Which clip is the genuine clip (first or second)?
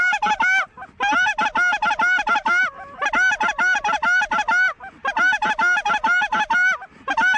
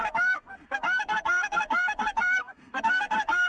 first